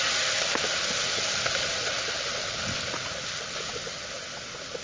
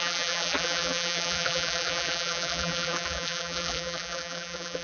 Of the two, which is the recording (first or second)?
first